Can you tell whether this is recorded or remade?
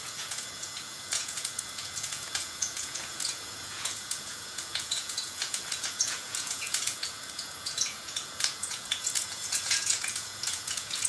remade